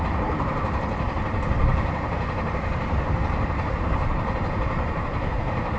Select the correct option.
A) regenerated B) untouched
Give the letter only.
A